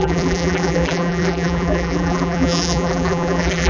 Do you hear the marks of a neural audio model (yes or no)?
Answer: yes